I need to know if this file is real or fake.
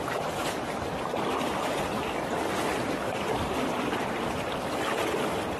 real